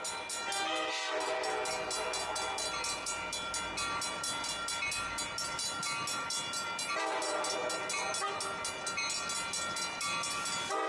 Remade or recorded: recorded